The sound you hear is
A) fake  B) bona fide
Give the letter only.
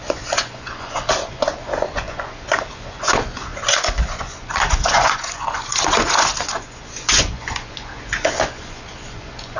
A